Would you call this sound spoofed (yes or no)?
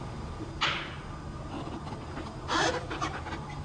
no